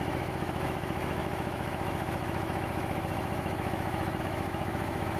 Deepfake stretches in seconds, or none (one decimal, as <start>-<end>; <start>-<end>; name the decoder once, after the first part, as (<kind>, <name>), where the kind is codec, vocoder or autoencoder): 0.0-5.2 (autoencoder, DAC-VAE)